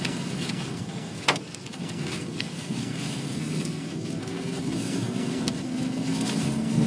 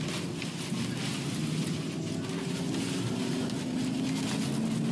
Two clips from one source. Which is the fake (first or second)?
first